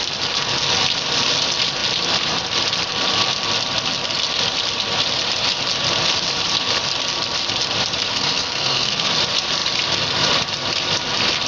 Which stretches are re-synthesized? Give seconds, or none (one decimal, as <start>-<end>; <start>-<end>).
8.1-9.1